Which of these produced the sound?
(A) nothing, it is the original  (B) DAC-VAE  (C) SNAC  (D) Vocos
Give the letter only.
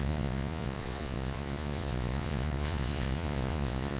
D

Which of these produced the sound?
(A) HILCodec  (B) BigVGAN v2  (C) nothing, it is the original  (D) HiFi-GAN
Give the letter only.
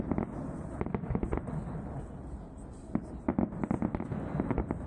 C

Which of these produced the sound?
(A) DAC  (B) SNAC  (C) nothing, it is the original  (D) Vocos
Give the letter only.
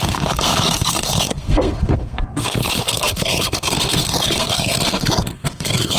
B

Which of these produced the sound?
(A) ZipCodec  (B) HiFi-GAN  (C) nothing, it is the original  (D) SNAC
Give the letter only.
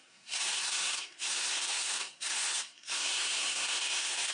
D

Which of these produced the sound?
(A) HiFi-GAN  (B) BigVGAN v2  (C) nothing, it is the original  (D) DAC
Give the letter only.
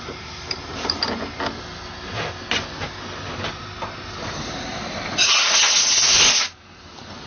C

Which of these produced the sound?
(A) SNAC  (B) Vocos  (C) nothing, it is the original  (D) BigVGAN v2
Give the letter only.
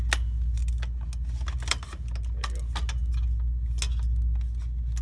C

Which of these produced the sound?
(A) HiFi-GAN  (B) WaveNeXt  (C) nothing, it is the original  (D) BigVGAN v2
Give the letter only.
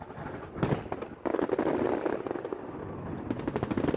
C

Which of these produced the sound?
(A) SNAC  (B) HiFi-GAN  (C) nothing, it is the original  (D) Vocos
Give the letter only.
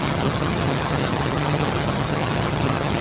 B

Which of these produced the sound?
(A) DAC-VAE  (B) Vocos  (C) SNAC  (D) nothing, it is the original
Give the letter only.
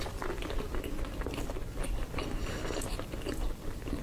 D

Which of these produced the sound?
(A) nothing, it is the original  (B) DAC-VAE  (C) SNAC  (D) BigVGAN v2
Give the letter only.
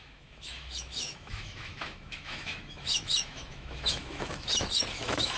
B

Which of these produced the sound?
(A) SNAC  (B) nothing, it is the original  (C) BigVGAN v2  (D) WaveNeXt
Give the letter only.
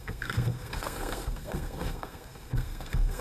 A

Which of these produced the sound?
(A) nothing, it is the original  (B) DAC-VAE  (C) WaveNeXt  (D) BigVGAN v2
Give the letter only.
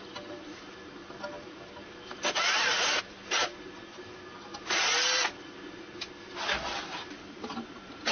A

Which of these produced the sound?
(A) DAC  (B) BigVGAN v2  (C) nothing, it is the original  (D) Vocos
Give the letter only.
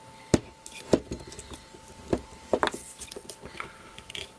C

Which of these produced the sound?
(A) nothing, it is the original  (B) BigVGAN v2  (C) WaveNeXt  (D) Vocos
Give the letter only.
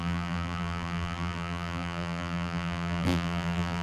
B